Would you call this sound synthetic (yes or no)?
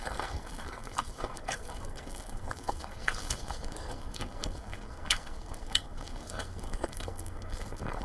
yes